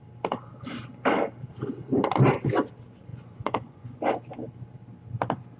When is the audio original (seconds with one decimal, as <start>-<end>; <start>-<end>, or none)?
0.0-3.1; 4.0-5.6